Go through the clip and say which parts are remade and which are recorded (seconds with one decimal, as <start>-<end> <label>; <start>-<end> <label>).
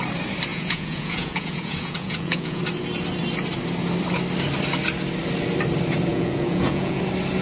0.0-0.5 recorded; 0.5-2.6 remade; 2.6-6.1 recorded; 6.1-7.0 remade; 7.0-7.4 recorded